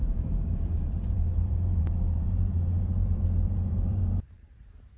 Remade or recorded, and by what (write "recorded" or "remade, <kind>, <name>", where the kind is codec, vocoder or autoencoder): remade, vocoder, BigVGAN v2